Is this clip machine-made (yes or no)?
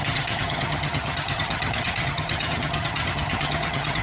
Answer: yes